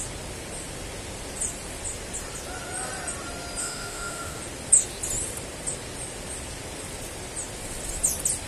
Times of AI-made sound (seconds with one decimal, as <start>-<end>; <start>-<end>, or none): 3.6-4.4